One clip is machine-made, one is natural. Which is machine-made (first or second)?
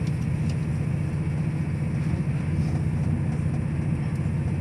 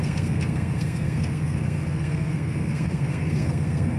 second